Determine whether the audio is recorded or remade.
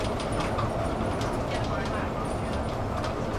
recorded